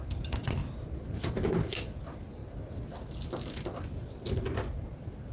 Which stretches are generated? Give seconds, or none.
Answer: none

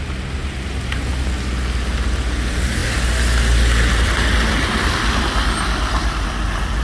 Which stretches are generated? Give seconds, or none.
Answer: 0.4-1.1; 2.8-6.8

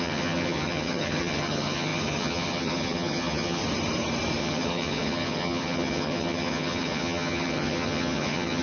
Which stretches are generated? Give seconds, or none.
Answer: 0.0-3.6; 4.4-8.6

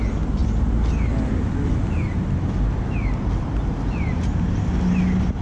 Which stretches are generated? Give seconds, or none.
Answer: none

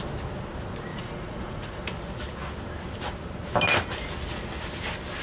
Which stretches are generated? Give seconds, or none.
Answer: 0.9-1.8

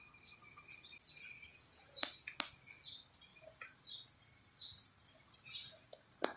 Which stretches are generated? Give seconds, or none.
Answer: 1.5-2.0

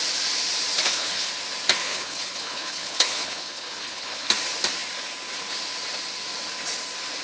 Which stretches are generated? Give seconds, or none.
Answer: 0.8-1.3; 1.8-4.3

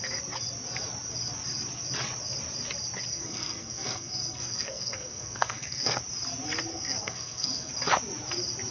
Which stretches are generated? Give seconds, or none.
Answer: 3.1-6.0; 6.7-7.7